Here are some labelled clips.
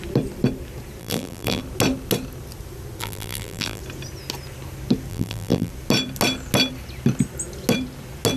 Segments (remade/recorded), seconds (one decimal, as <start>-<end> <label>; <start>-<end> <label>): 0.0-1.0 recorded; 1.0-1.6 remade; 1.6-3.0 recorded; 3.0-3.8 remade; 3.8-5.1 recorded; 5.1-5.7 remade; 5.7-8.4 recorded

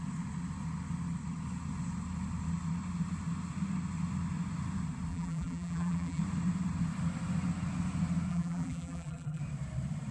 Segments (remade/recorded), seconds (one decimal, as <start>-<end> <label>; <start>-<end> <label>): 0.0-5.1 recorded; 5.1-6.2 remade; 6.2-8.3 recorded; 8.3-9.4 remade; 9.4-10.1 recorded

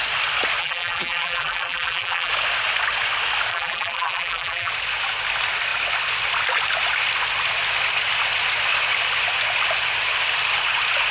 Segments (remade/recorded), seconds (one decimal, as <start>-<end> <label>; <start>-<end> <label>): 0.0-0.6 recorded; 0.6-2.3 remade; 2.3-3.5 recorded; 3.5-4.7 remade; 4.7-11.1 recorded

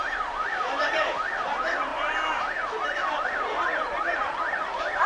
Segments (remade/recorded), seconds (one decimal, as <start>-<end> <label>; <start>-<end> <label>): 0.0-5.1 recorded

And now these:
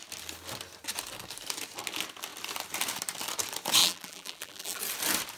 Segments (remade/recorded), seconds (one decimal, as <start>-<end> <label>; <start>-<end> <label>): 0.0-3.8 recorded; 3.8-4.8 remade; 4.8-5.4 recorded

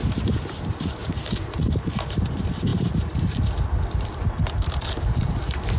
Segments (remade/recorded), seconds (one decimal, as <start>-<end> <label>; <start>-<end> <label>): 0.0-1.0 remade; 1.0-1.6 recorded; 1.6-5.8 remade